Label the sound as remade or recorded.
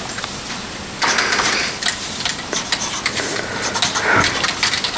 recorded